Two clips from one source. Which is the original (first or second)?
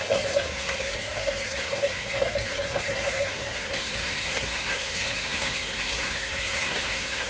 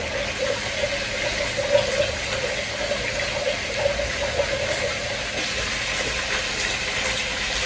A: second